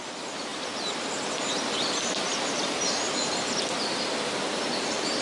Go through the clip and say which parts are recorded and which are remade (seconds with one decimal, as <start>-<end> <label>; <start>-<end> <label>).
0.0-5.2 recorded